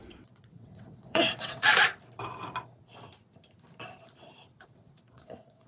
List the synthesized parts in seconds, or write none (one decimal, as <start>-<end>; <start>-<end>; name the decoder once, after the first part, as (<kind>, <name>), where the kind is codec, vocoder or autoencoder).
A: 0.0-1.7 (vocoder, WaveNeXt); 5.1-5.7